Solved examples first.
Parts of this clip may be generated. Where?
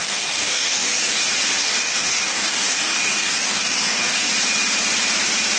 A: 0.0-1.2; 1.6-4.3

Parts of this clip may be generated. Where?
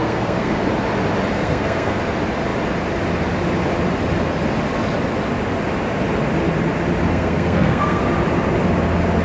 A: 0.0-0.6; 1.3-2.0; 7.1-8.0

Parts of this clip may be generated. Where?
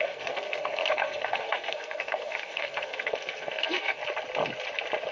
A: 0.0-4.0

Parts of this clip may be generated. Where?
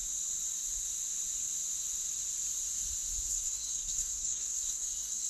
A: 3.3-5.3